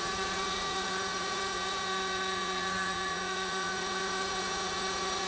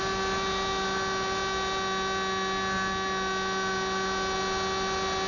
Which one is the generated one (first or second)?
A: first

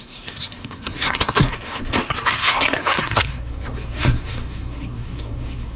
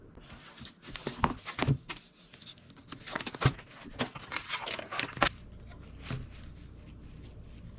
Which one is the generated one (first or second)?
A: first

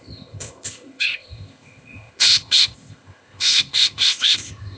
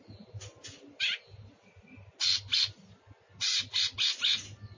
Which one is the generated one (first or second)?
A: first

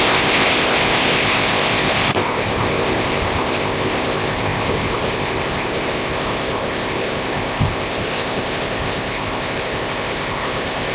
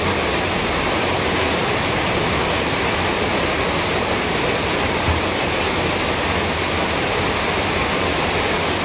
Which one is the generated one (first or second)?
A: first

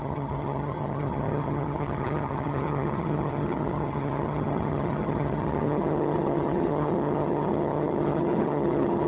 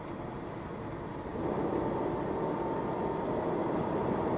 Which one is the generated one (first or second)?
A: first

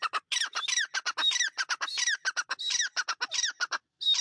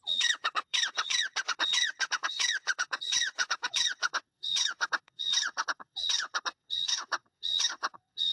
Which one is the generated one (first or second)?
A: second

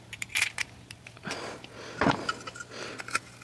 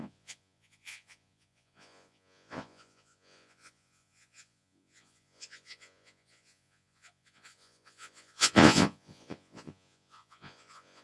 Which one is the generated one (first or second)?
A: second